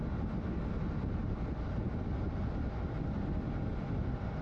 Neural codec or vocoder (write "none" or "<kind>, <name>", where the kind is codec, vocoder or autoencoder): none